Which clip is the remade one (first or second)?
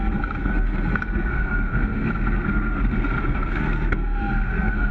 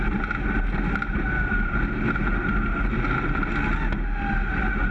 first